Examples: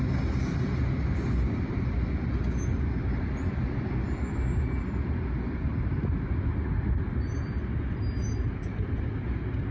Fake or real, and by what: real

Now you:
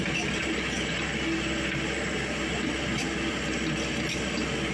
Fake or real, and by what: real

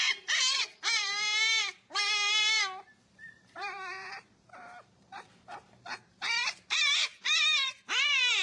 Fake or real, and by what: fake, vocoder, BigVGAN v2